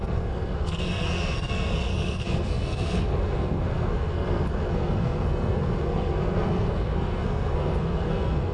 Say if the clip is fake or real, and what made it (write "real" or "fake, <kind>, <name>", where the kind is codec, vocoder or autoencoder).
fake, codec, SNAC